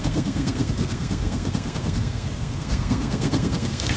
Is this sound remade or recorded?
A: remade